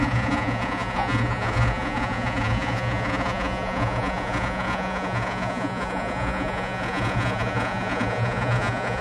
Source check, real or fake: fake